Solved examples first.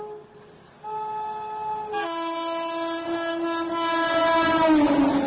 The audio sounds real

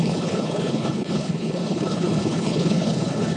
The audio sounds fake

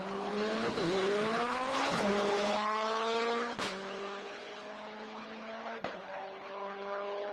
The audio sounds fake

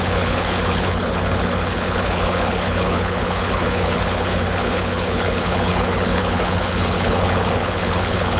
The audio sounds fake